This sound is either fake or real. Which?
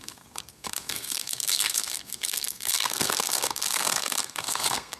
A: fake